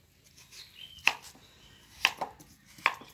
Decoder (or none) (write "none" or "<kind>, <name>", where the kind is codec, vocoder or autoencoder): none